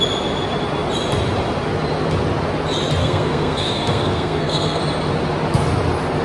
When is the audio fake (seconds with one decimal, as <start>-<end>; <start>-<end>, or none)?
3.0-4.8